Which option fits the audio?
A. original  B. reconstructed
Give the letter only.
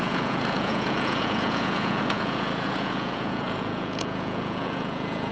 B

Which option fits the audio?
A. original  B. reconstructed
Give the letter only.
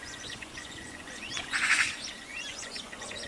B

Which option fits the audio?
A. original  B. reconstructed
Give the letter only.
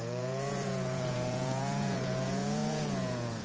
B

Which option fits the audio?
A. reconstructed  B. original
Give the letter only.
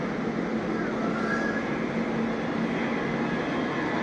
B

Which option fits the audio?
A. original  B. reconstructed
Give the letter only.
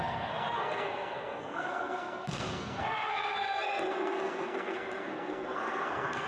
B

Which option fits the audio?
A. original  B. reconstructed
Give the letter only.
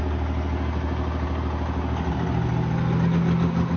A